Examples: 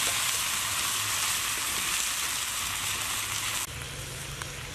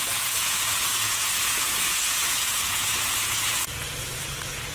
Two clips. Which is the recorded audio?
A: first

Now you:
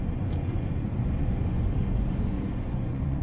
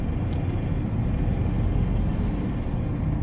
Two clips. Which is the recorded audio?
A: second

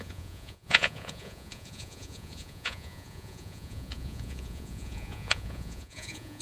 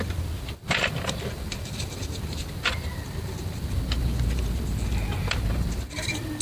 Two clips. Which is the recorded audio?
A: second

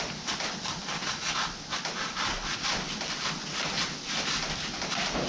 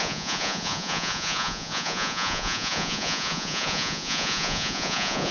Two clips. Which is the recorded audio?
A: first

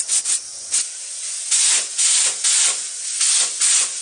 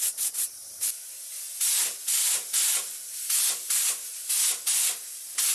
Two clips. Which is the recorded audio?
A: second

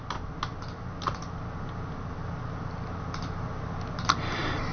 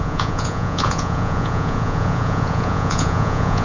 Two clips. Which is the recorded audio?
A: first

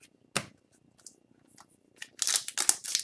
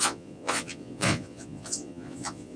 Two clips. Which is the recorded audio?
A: first